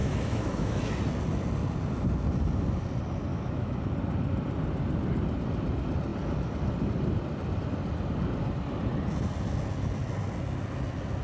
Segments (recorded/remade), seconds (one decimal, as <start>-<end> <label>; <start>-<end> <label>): 0.0-0.8 remade; 0.8-3.3 recorded; 3.3-3.8 remade; 3.8-11.2 recorded